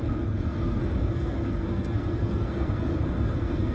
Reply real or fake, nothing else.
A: fake